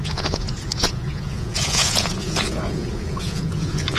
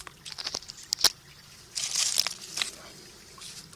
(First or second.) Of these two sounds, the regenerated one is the first